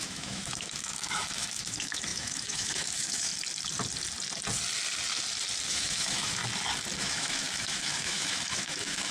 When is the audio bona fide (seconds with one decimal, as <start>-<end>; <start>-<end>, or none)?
3.3-5.7; 6.4-7.0